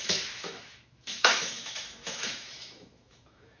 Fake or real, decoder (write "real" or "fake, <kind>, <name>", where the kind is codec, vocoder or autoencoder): fake, autoencoder, DAC-VAE